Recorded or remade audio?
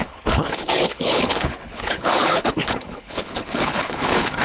remade